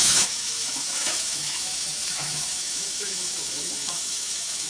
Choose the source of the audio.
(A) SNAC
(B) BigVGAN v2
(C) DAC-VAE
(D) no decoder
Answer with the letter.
C